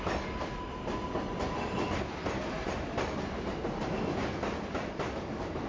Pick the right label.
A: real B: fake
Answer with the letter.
A